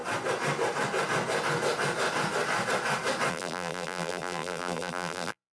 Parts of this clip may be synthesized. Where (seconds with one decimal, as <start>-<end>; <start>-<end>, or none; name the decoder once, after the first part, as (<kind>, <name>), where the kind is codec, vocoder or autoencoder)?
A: 3.3-5.5 (vocoder, BigVGAN v2)